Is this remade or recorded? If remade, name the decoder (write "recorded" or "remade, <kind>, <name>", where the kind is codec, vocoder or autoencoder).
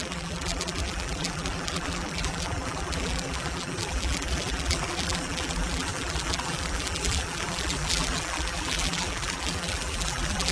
remade, vocoder, BigVGAN v2